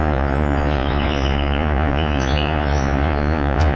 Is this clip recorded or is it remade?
remade